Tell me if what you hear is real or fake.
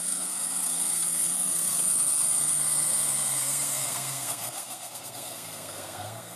fake